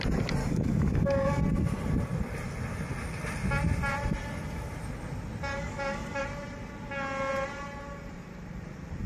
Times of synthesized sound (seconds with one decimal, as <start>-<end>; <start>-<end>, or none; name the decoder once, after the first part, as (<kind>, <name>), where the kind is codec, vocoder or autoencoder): 0.4-1.4 (codec, DAC); 5.5-6.2